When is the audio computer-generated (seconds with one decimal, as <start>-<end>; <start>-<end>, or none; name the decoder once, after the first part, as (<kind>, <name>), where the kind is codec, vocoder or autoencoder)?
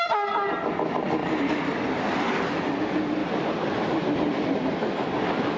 1.2-2.7 (vocoder, BigVGAN v2); 3.2-4.4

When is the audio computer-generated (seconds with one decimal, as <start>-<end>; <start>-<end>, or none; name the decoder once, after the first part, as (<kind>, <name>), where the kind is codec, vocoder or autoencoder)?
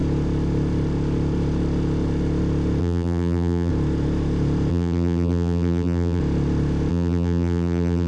2.8-3.7 (vocoder, BigVGAN v2); 4.7-6.2; 6.9-8.1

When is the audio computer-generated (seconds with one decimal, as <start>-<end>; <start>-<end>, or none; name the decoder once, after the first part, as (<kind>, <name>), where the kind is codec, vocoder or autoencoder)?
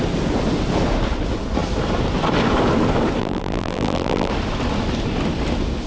3.2-4.3 (vocoder, BigVGAN v2)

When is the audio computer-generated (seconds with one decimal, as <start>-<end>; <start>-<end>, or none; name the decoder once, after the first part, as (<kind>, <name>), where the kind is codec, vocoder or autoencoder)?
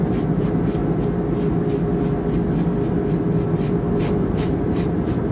0.0-0.8 (vocoder, BigVGAN v2); 4.0-5.3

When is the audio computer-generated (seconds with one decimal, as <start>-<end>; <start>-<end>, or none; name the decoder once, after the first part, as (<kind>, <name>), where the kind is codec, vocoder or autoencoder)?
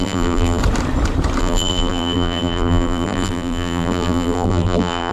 0.0-0.6 (vocoder, BigVGAN v2); 1.4-5.1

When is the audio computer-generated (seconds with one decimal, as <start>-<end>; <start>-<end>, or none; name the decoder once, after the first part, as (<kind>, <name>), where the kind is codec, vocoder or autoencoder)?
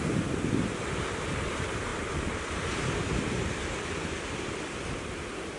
0.0-5.6 (vocoder, BigVGAN v2)